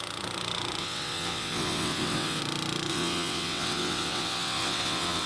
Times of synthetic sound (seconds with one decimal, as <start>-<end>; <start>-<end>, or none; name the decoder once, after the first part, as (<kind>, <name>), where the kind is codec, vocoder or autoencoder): 0.8-2.4 (vocoder, WaveNeXt); 2.9-5.3